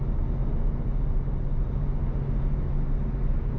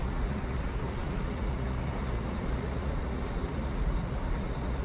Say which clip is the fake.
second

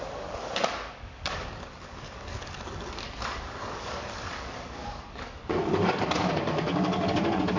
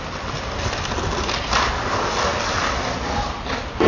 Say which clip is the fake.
first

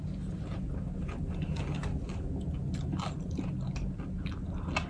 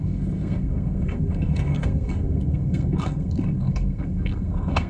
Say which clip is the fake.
second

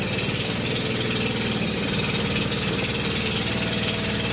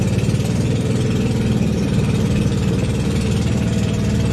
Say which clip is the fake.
second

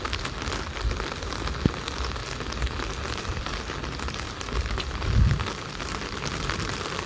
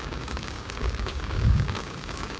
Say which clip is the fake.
second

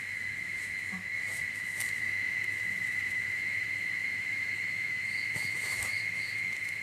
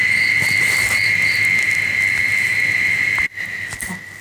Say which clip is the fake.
first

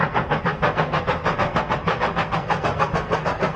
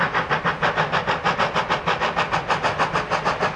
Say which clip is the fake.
first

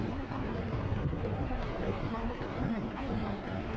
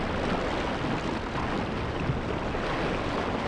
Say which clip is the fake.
first